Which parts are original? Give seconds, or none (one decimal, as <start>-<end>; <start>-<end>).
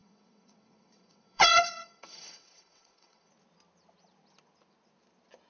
3.3-5.5